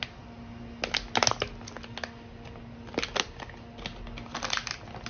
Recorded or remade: recorded